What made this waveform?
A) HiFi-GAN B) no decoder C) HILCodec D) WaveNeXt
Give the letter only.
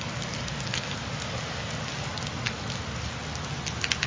B